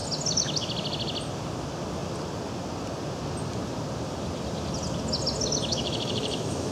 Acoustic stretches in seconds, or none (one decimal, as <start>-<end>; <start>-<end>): 0.0-5.7